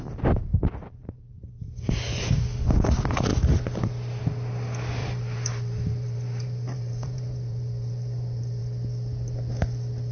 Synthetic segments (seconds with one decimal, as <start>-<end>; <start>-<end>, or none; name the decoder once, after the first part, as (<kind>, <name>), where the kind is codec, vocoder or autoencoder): 0.5-1.3 (vocoder, BigVGAN v2); 5.0-8.6

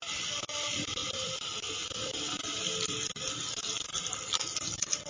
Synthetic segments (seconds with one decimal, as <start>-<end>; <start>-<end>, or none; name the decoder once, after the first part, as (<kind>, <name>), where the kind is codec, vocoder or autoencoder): none

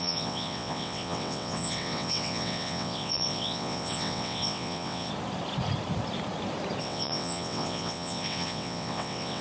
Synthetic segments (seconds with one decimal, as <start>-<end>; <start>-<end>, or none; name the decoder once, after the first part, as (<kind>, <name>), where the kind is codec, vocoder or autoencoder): 0.0-5.1 (vocoder, WaveNeXt); 6.8-9.4

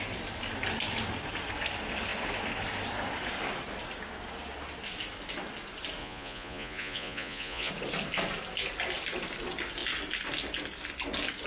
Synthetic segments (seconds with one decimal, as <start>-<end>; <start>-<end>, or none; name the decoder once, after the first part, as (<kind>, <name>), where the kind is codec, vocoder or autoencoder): 6.0-7.7 (vocoder, Vocos)